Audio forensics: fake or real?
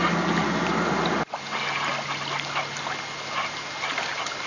real